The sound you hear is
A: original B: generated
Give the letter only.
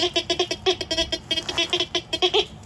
A